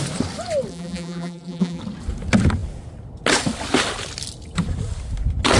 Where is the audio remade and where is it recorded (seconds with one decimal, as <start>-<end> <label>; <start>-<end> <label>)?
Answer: 0.0-0.7 recorded; 0.7-1.8 remade; 1.8-5.6 recorded